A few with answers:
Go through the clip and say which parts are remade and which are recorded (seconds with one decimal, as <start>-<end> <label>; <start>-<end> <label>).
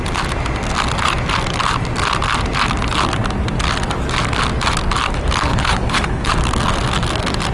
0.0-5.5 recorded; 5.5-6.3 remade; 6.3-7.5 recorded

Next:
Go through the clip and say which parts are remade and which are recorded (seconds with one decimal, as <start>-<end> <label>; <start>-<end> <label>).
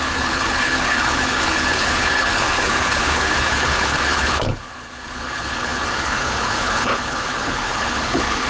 0.0-8.5 remade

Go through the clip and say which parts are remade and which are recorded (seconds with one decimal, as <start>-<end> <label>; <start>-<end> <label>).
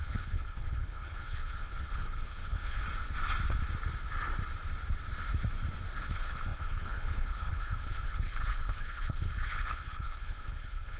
0.0-2.8 remade; 2.8-6.1 recorded; 6.1-11.0 remade